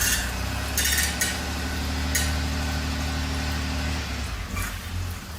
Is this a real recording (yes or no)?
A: yes